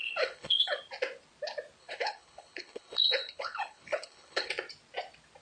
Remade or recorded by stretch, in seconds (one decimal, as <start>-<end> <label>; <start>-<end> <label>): 0.0-0.8 remade; 0.8-1.8 recorded; 1.8-4.5 remade; 4.5-5.4 recorded

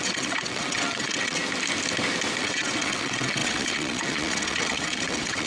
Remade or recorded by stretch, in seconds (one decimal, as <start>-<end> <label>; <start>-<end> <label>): 0.0-1.4 remade; 1.4-2.4 recorded; 2.4-5.5 remade

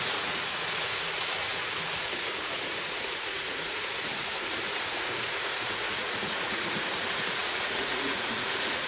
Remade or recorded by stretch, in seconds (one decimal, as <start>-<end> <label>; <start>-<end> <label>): 0.0-8.9 remade